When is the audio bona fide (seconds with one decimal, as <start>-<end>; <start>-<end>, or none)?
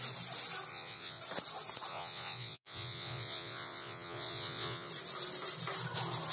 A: 0.0-0.7; 1.2-1.9; 4.9-6.3